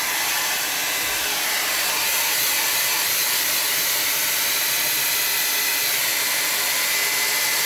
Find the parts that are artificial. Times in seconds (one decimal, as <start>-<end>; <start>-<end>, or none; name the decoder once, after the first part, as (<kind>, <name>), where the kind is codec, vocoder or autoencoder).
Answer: none